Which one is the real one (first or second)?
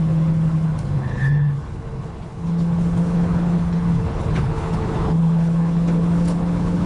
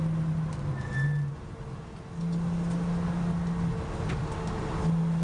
second